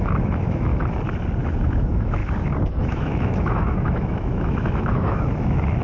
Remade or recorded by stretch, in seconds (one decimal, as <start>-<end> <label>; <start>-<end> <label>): 0.0-0.7 remade; 0.7-1.4 recorded; 1.4-2.2 remade; 2.2-2.7 recorded; 2.7-5.8 remade